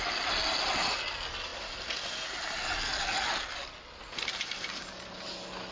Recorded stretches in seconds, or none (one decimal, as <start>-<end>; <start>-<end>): 0.0-5.7